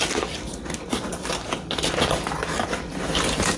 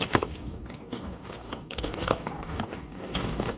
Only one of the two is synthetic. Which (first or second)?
second